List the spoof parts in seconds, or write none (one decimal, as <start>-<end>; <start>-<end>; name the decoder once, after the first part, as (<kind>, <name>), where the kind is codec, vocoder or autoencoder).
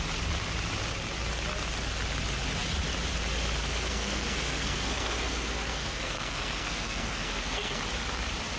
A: 3.6-7.8 (codec, SNAC)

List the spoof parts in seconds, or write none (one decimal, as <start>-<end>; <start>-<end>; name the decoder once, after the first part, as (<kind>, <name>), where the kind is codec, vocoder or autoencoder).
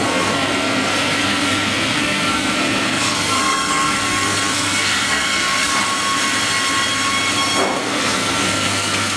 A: 0.0-5.7 (codec, SNAC); 7.8-9.2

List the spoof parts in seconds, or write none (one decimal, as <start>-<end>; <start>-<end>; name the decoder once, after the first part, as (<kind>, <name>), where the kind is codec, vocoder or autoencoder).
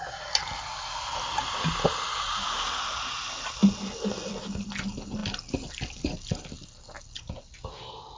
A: none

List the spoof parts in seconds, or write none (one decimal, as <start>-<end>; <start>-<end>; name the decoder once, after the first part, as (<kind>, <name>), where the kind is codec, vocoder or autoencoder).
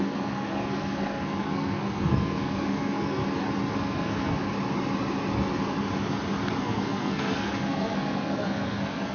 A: 0.0-3.2 (codec, SNAC); 3.7-4.3; 6.6-9.1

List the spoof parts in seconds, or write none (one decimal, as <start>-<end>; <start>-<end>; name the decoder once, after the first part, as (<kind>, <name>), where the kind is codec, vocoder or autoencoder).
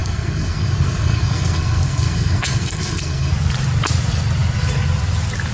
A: 0.0-3.3 (codec, SNAC)